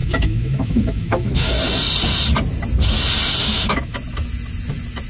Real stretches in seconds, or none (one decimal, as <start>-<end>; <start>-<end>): 1.5-3.4; 3.9-5.1